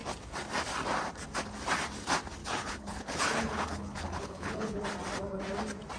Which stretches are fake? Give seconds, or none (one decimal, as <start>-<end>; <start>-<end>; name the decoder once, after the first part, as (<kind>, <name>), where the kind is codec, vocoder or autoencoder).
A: 2.4-4.8 (codec, HILCodec)